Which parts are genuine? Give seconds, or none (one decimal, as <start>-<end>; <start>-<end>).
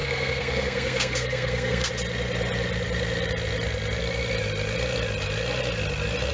1.9-6.3